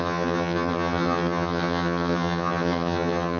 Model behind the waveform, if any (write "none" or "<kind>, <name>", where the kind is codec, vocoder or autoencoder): vocoder, HiFi-GAN